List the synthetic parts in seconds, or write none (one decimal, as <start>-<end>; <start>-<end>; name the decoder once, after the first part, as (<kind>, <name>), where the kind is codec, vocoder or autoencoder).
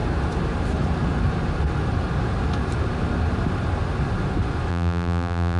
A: 4.7-5.6 (vocoder, BigVGAN v2)